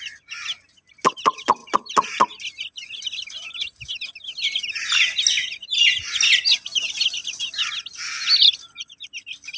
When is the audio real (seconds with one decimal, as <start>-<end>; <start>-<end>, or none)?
0.0-9.6